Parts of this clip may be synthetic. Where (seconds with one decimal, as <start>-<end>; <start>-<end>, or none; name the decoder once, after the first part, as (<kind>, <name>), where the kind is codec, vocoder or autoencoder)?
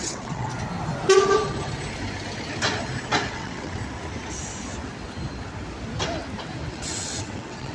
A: 0.0-0.5 (vocoder, WaveNeXt); 3.3-3.8; 6.7-7.7